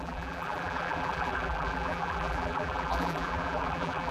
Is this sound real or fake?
fake